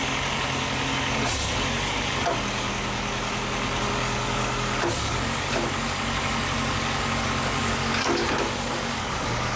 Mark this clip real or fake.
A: fake